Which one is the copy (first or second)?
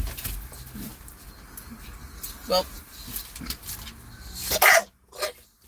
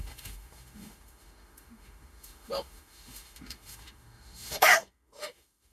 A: second